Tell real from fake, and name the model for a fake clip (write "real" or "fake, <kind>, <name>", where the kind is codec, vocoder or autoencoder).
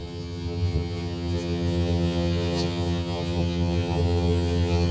fake, vocoder, HiFi-GAN